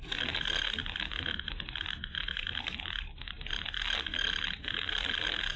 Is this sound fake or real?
real